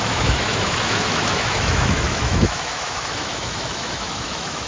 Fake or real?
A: fake